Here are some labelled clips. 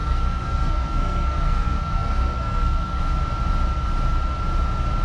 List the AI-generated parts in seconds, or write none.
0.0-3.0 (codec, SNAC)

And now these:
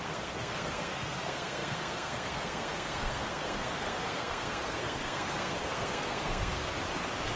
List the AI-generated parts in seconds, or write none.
0.0-6.6 (codec, SNAC)

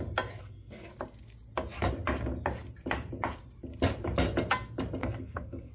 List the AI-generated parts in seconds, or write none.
0.4-0.9 (codec, SNAC); 5.0-5.7

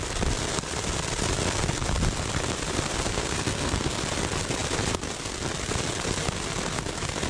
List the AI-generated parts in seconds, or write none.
3.1-3.9 (codec, SNAC)

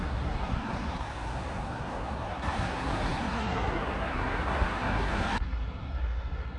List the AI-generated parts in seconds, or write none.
0.0-6.6 (codec, SNAC)